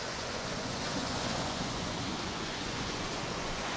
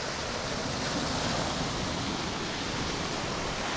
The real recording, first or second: second